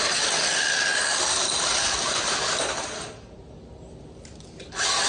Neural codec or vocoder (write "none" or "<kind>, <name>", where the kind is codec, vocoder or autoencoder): none